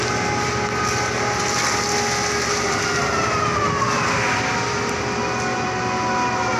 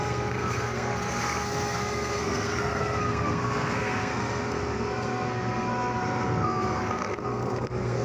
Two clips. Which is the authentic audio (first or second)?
first